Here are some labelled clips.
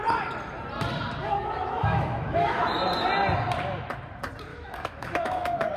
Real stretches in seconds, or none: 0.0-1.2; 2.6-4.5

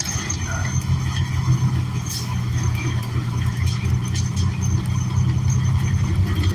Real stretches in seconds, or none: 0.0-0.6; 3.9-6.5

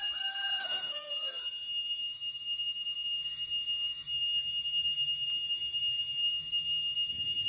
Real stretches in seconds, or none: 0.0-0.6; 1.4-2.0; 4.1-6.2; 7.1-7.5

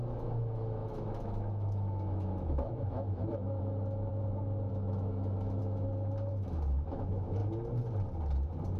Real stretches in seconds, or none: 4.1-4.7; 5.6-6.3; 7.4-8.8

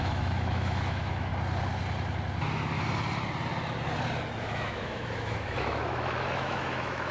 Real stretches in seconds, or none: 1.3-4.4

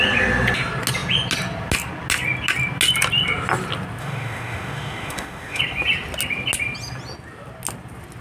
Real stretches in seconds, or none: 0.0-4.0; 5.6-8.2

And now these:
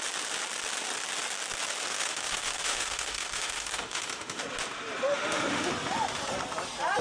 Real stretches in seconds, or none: 0.0-1.9; 4.4-5.1; 5.7-7.0

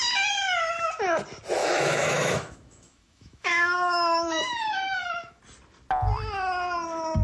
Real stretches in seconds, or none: 0.0-1.6; 5.4-7.2